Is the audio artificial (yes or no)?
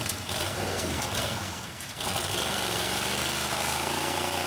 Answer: yes